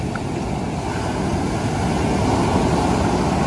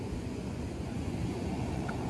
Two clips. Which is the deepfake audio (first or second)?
second